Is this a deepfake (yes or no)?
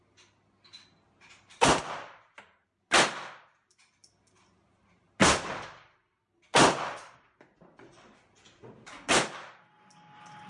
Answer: no